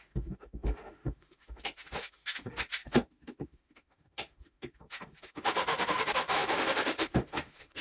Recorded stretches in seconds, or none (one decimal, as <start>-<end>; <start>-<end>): none